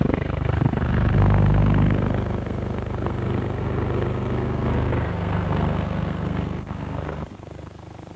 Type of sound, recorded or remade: remade